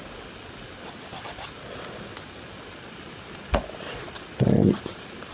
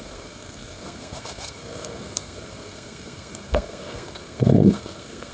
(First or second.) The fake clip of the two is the second